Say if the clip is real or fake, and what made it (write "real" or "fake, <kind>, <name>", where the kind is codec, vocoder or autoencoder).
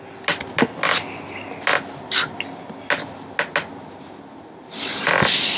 real